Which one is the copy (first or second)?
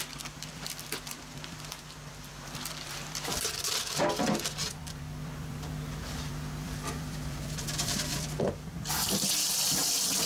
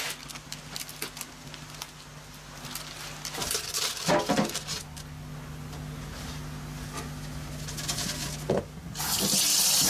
first